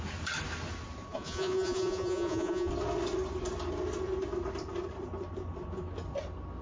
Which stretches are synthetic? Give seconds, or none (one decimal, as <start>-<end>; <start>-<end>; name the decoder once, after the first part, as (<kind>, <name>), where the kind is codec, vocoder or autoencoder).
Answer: 1.1-2.7 (vocoder, Vocos)